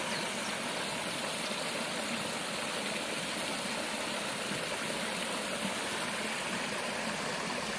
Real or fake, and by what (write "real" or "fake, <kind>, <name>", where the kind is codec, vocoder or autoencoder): real